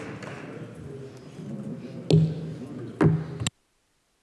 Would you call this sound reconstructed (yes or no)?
no